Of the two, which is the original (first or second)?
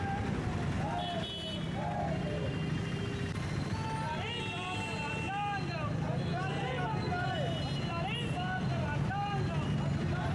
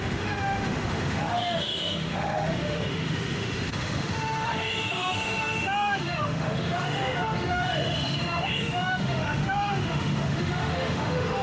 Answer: first